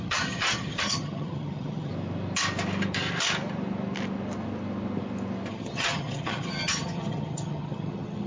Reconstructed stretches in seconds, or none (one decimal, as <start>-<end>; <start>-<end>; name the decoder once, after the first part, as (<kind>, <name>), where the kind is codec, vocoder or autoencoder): 0.0-1.9 (vocoder, HiFi-GAN); 5.5-8.3